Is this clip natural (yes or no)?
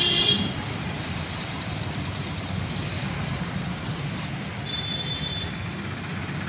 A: no